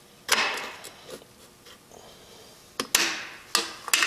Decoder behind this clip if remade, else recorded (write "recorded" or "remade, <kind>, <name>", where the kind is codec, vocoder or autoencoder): recorded